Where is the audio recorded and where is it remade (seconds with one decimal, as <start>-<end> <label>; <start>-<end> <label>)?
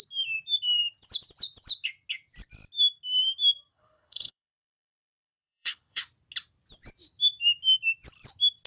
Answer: 0.0-3.7 recorded; 3.7-6.0 remade; 6.0-8.7 recorded